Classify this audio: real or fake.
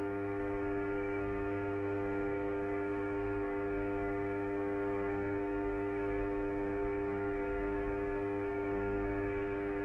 fake